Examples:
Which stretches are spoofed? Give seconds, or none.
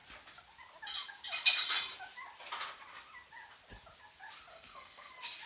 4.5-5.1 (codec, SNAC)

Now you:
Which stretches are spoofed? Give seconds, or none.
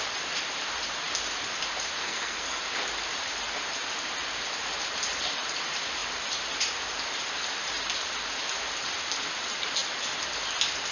2.0-2.6 (codec, SNAC)